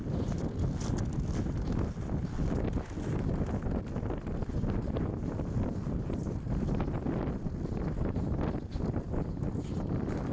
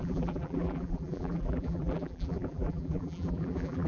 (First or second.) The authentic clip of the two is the first